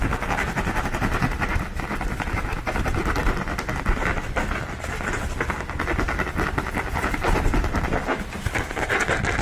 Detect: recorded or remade recorded